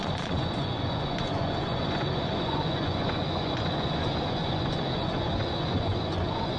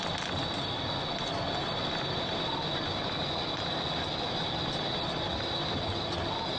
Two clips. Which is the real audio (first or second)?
second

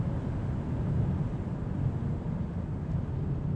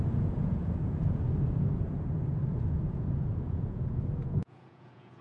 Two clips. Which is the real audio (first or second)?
first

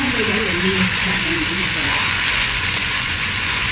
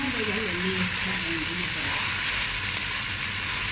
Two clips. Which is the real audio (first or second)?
second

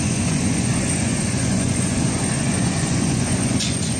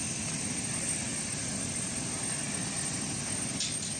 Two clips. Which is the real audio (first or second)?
second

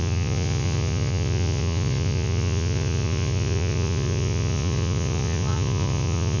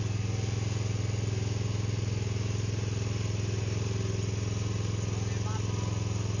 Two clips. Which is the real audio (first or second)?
second